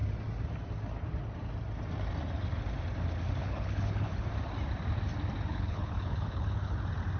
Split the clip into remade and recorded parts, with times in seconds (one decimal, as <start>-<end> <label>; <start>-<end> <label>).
0.0-3.4 recorded; 3.4-4.3 remade; 4.3-5.5 recorded; 5.5-6.8 remade; 6.8-7.2 recorded